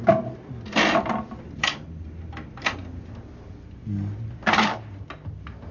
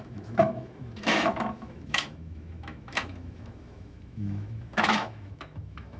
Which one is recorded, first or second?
first